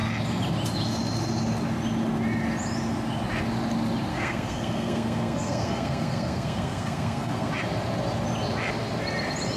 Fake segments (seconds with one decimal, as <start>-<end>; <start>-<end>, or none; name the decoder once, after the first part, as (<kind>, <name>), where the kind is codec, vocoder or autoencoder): 4.1-7.5 (codec, SNAC)

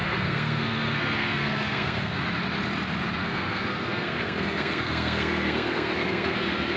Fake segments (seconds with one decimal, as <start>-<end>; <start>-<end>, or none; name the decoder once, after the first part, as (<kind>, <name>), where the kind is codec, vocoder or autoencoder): 0.0-2.2 (codec, SNAC); 3.2-6.8